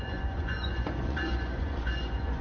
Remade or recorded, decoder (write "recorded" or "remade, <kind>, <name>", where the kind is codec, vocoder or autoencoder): remade, vocoder, Vocos